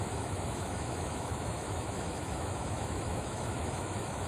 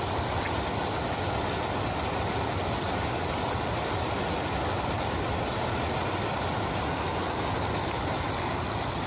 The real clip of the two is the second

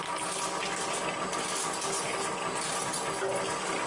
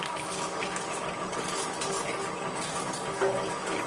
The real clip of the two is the first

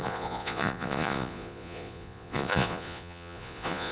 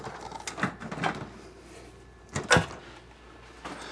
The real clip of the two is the second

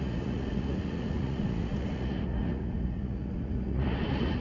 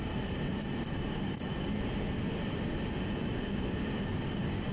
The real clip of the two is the second